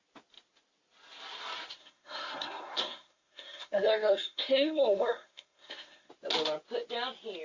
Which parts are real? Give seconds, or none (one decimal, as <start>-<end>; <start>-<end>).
0.0-1.8; 6.1-7.4